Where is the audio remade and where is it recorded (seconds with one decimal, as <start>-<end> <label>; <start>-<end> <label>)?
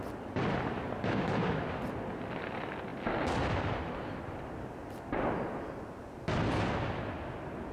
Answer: 0.0-7.7 recorded